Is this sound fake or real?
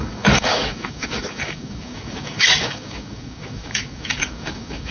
fake